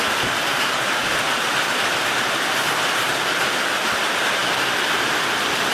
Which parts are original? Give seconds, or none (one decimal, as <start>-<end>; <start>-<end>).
0.0-4.4